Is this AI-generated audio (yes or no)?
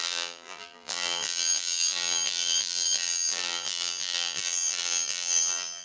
yes